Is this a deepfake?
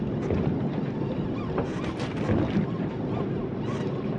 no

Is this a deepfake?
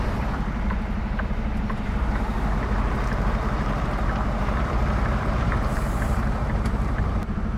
yes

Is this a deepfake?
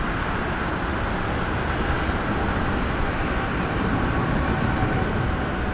no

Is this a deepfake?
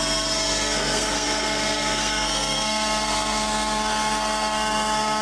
yes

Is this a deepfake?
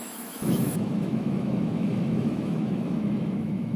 yes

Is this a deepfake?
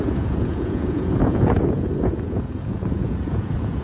yes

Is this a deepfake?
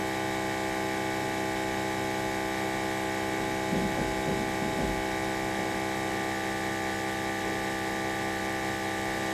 no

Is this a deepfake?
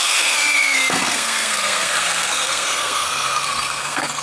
yes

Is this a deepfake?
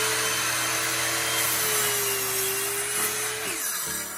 no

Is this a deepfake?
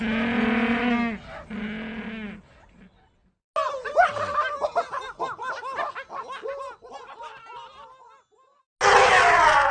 no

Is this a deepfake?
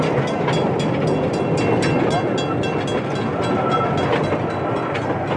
no